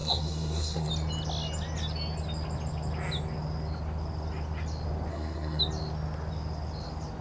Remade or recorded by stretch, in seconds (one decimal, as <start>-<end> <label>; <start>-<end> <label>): 0.0-0.9 remade; 0.9-5.1 recorded; 5.1-5.6 remade; 5.6-7.2 recorded